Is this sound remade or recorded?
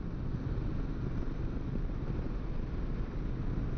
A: recorded